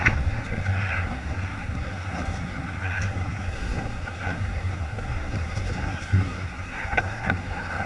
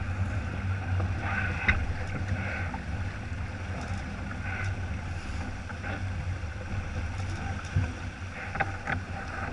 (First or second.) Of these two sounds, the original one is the second